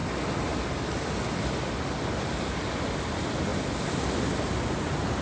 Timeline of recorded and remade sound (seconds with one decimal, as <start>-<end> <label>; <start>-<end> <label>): 0.0-5.2 recorded